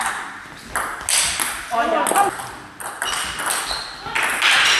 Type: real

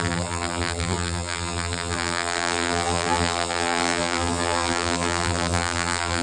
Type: fake